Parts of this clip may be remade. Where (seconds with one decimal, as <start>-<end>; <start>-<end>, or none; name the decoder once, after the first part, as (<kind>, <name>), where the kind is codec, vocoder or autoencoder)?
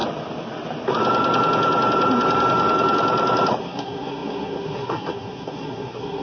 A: 3.6-6.2 (codec, SNAC)